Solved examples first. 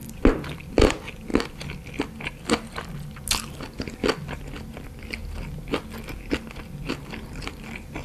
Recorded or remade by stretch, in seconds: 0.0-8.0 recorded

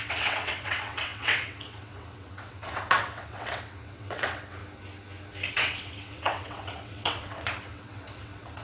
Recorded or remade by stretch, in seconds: 0.0-4.6 remade; 4.6-5.5 recorded; 5.5-8.6 remade

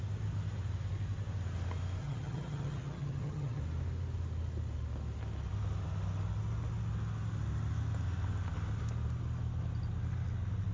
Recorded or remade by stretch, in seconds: 0.0-2.0 recorded; 2.0-3.6 remade; 3.6-10.7 recorded

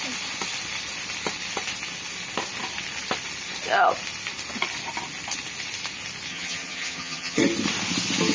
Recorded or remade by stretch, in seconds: 0.0-6.3 recorded; 6.3-7.4 remade; 7.4-8.3 recorded

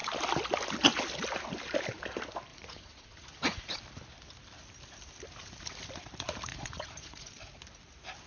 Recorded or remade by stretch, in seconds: 0.0-2.5 recorded; 2.5-3.8 remade; 3.8-6.5 recorded; 6.5-7.3 remade; 7.3-8.3 recorded

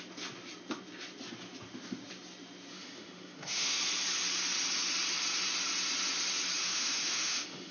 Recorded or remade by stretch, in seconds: 0.0-2.7 recorded; 2.7-3.8 remade; 3.8-6.6 recorded; 6.6-7.7 remade

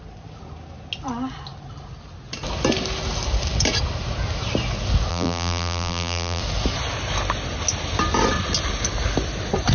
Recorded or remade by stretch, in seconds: 0.0-5.1 recorded; 5.1-6.4 remade; 6.4-9.7 recorded

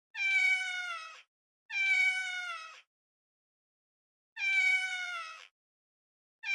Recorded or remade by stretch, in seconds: 0.0-4.9 recorded; 4.9-5.5 remade; 5.5-6.5 recorded